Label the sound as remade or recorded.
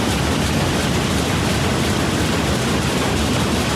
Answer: recorded